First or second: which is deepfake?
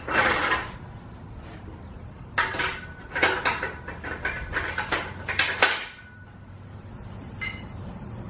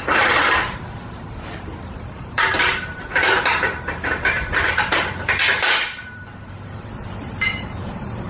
second